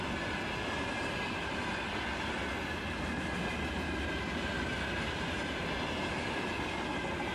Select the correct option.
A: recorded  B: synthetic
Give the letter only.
A